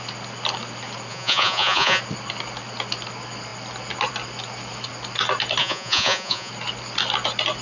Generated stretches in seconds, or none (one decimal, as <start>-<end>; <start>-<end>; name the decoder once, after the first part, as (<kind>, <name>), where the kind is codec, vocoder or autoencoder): 1.1-2.0 (vocoder, Vocos); 5.6-6.5